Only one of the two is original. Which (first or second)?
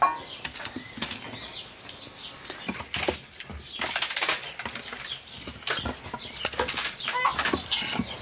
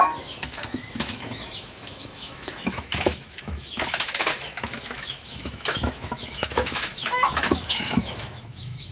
first